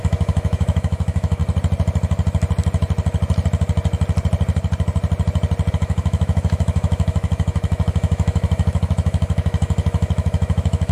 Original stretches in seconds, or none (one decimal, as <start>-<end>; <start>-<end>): 1.4-5.7